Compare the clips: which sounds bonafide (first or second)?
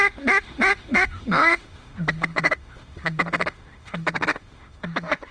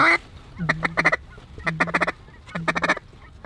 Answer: second